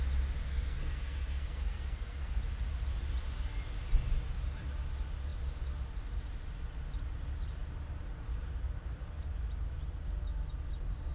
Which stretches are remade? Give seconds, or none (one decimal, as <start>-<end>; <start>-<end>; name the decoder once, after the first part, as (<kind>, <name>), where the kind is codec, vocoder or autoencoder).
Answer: 0.4-2.4 (codec, SNAC)